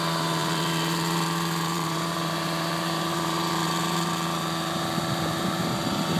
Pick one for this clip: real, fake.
fake